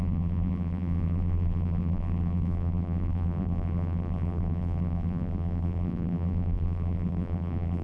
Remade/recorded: remade